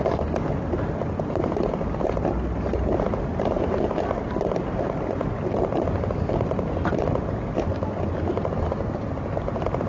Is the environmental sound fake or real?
real